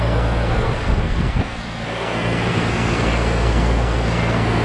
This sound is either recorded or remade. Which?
remade